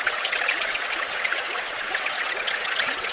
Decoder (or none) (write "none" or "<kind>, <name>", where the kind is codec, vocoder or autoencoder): vocoder, WaveNeXt